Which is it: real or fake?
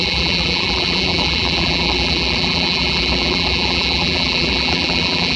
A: fake